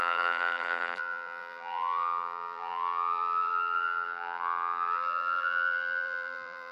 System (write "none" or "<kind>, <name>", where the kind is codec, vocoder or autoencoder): vocoder, BigVGAN v2